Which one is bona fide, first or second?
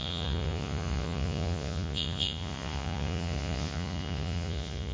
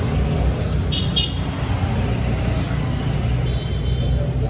second